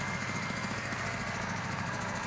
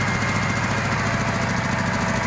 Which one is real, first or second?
second